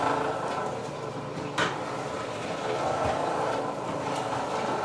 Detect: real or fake fake